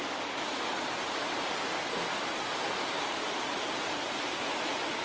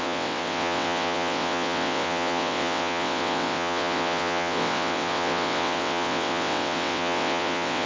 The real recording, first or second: first